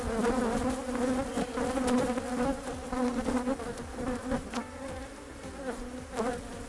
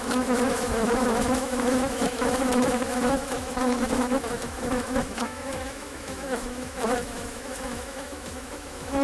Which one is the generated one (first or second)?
second